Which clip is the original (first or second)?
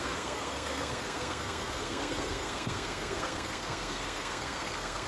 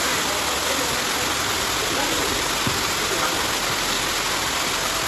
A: second